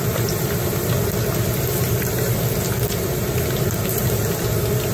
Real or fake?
real